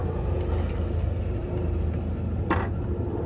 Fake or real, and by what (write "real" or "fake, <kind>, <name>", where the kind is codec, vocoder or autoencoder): real